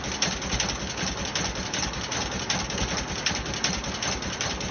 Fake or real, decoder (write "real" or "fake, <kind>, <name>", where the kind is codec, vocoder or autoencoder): real